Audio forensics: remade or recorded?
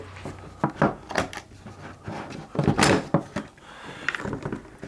recorded